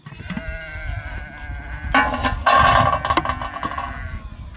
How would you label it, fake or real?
real